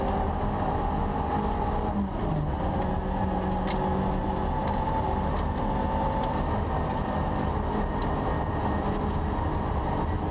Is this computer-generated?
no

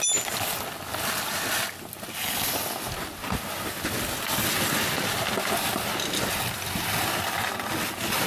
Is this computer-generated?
no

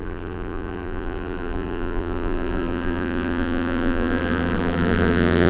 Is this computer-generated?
yes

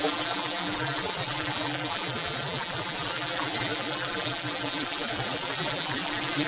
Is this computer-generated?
yes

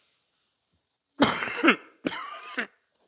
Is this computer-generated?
yes